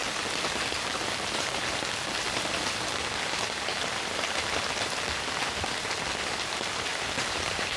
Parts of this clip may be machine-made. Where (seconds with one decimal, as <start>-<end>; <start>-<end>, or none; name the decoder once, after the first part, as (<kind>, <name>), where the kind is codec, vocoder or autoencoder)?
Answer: 6.9-7.8 (vocoder, BigVGAN v2)